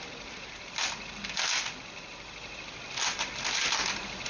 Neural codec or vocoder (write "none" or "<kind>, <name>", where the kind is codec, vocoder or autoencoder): none